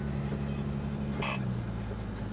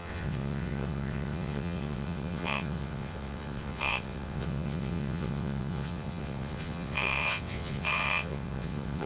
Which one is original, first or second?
first